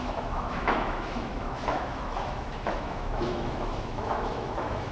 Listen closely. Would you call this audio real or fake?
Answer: fake